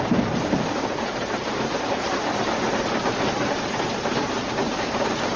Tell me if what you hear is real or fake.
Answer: fake